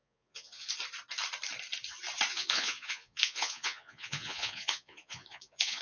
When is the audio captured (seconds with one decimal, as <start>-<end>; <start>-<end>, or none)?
0.7-2.3